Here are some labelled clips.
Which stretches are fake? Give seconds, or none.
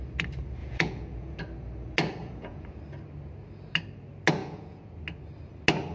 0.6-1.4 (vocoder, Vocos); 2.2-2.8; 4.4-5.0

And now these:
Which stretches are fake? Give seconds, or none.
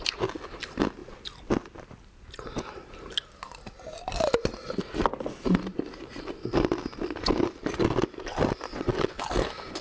8.7-9.2 (vocoder, WaveNeXt)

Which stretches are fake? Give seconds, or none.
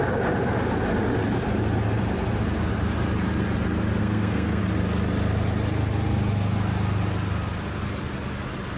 4.0-4.6 (codec, SNAC)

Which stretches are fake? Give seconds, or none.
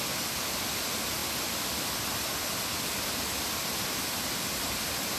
none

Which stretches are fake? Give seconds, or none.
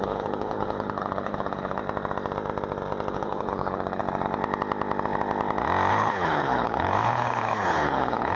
0.0-1.8 (codec, HILCodec); 3.1-4.0; 5.9-8.4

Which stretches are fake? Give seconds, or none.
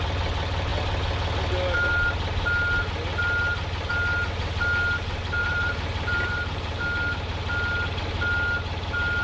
5.4-6.8 (vocoder, BigVGAN v2)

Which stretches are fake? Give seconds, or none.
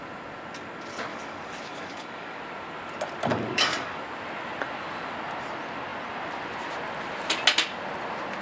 1.1-2.4 (codec, DAC); 3.3-4.0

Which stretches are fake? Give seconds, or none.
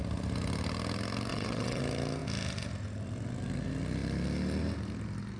1.3-1.8 (vocoder, WaveNeXt)